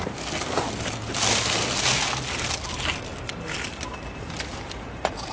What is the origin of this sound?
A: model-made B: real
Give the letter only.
B